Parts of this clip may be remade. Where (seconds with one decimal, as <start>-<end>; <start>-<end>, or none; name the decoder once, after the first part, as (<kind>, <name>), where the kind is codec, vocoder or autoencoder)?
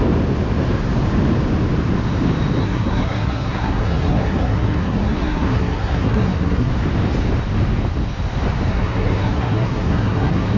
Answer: 2.6-6.7 (codec, SNAC); 8.7-10.6